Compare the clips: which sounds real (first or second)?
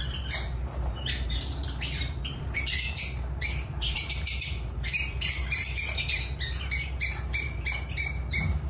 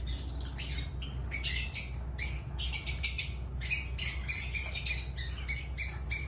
second